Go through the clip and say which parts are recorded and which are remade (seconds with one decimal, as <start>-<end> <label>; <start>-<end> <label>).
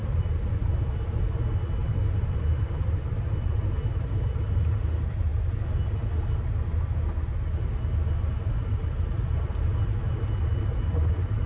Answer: 0.0-1.4 remade; 1.4-1.8 recorded; 1.8-3.1 remade; 3.1-11.5 recorded